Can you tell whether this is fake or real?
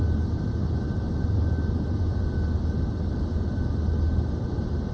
real